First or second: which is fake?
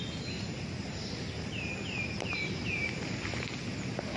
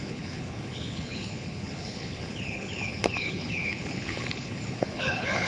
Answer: second